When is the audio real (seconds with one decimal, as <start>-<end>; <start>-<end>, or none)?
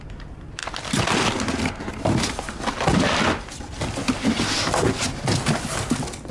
0.0-6.3